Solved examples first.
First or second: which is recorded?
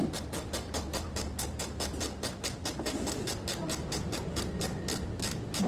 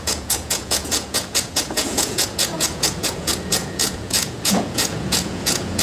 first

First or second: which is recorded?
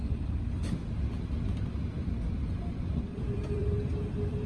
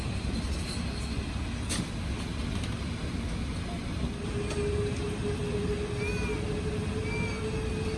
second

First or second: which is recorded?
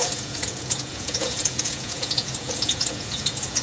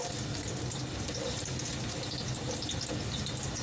second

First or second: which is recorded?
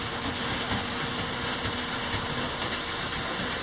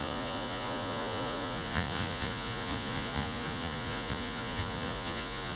first